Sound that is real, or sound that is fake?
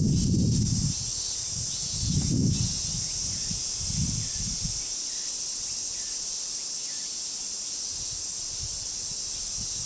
real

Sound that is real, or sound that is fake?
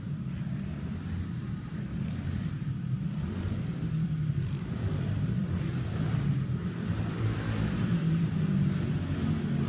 fake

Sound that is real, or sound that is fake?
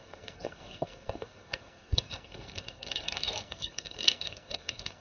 fake